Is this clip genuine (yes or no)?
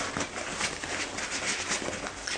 yes